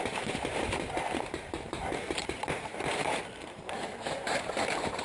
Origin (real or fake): fake